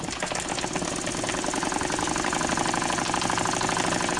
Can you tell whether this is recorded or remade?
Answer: recorded